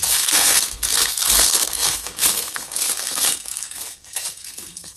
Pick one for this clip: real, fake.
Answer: fake